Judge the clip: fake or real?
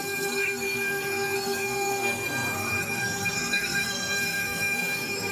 fake